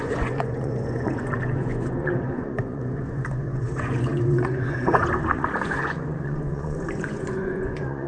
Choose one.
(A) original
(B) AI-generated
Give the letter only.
B